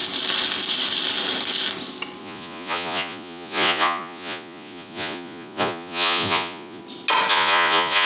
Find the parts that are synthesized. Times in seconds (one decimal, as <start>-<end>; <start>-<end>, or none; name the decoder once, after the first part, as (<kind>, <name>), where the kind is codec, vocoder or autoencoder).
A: 2.2-6.8 (vocoder, Vocos); 7.3-8.1